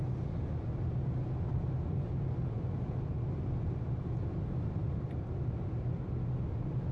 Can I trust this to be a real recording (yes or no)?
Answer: yes